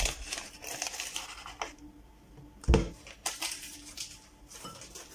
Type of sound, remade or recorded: recorded